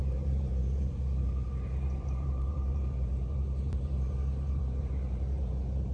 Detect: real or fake fake